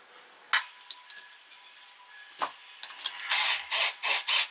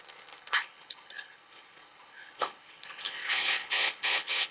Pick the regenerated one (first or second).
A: second